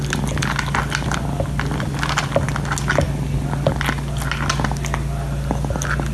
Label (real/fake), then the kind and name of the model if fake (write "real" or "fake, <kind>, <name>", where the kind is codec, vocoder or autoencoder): real